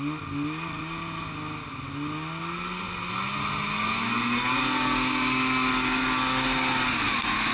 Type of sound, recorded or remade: recorded